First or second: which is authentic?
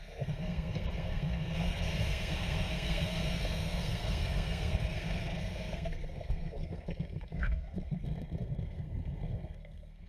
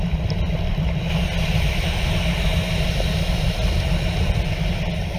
second